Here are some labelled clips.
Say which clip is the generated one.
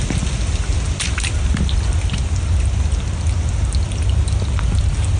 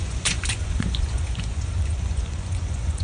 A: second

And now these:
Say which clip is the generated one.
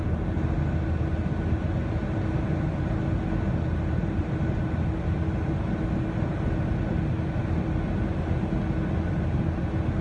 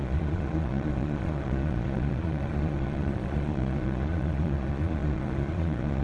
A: second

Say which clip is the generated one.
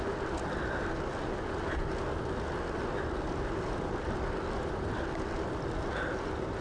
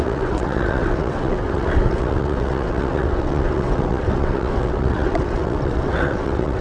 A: second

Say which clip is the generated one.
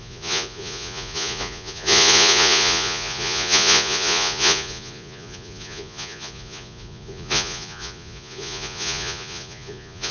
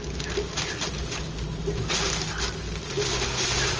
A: first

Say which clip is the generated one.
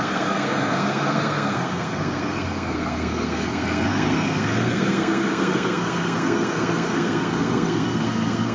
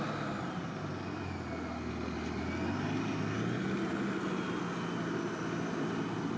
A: first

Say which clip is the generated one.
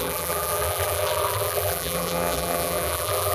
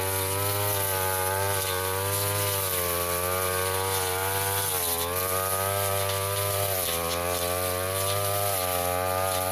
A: first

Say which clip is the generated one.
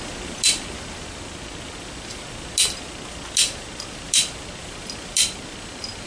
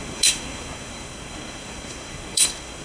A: second